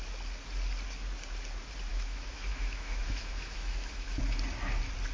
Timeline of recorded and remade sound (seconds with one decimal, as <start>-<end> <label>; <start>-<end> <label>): 0.0-1.9 recorded; 1.9-4.2 remade; 4.2-5.1 recorded